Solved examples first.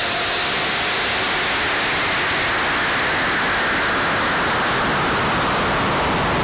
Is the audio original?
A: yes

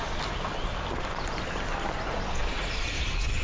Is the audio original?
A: yes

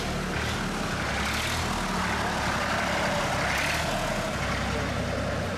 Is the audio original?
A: yes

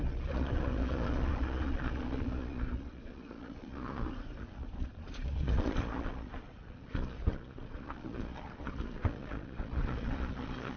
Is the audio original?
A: no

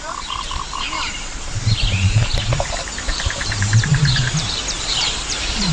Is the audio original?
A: no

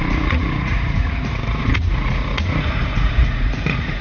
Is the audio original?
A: no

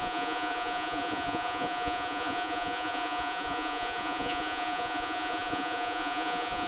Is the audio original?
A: no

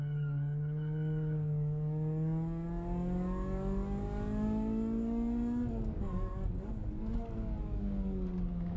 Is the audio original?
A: no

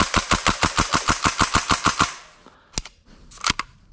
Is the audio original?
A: yes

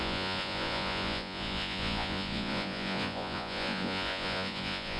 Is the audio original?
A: no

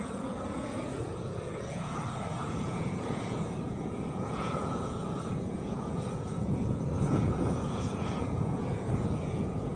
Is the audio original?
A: no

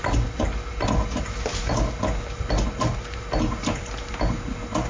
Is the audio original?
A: yes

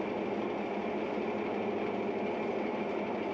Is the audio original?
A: yes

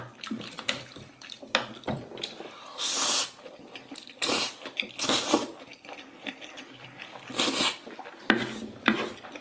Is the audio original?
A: no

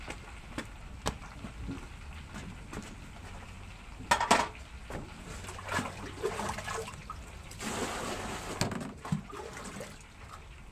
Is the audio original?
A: yes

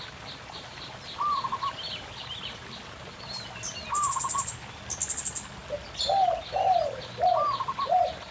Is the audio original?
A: yes